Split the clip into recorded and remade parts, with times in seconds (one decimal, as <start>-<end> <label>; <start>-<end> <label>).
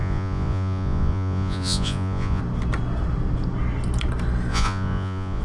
0.0-2.4 remade; 2.4-4.5 recorded; 4.5-5.4 remade